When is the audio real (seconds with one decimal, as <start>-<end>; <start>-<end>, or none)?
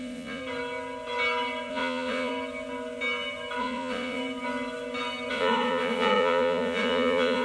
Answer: 0.4-1.7; 2.3-3.6; 4.2-5.3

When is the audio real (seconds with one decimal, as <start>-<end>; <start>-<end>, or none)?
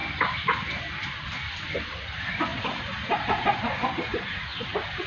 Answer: 0.0-2.5; 3.6-4.1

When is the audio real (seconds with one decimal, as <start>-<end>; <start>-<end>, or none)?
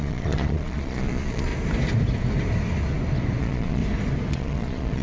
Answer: 1.5-3.4; 3.8-4.3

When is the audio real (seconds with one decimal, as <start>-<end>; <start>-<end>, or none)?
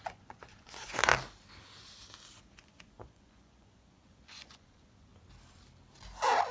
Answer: 1.1-2.3; 5.1-6.5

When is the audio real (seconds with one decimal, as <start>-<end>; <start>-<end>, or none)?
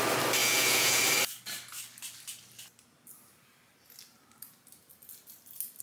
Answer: 0.0-0.4; 1.0-5.8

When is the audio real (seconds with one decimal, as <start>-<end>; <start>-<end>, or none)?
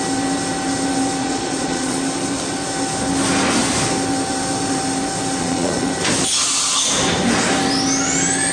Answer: 0.0-1.2; 2.0-5.4; 5.9-8.5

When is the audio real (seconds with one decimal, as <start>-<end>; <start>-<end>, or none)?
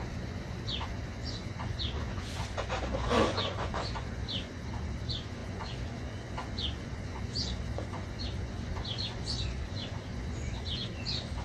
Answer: none